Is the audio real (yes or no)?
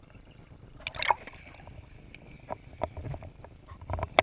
yes